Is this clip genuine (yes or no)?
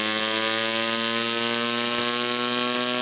yes